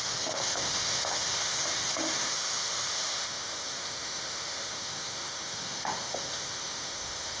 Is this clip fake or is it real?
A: fake